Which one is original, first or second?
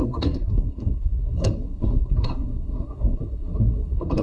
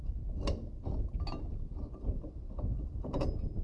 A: second